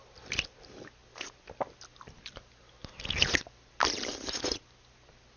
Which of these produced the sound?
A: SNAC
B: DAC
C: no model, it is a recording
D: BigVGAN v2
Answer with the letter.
C